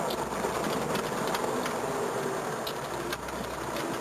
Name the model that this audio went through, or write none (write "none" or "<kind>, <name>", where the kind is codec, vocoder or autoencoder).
none